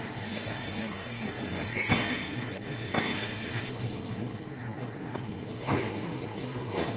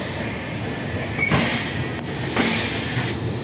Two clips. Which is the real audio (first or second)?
second